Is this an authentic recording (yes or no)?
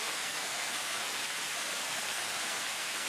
no